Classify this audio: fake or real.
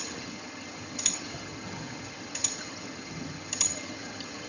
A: fake